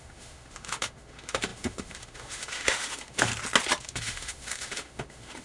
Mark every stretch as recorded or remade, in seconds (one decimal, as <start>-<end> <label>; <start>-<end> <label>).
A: 0.0-3.3 remade; 3.3-3.8 recorded; 3.8-5.4 remade